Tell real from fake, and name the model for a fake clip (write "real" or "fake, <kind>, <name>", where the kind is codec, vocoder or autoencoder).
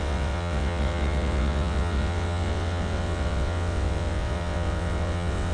fake, vocoder, WaveNeXt